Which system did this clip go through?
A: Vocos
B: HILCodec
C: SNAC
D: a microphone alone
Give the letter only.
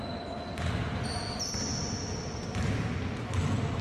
D